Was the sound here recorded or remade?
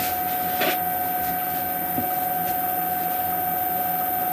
recorded